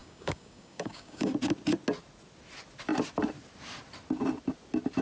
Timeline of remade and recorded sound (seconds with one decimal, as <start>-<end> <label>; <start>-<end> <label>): 0.0-1.3 remade; 1.3-5.0 recorded